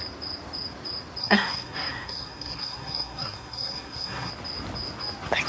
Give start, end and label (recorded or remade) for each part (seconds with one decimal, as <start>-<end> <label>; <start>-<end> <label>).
0.0-1.2 recorded; 1.2-4.3 remade; 4.3-5.5 recorded